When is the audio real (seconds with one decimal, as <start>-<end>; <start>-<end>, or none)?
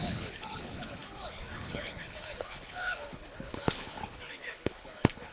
none